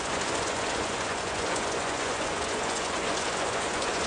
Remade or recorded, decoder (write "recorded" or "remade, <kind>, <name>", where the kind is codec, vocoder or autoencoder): remade, vocoder, Vocos